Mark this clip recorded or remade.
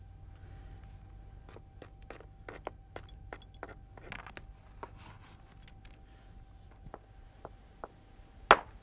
recorded